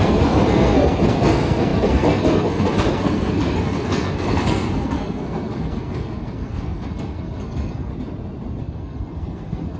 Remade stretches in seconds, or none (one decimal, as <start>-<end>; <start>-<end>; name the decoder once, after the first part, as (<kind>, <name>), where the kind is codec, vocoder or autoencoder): 0.0-7.9 (codec, SNAC); 8.6-9.8